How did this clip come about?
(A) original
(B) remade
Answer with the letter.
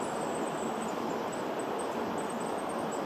A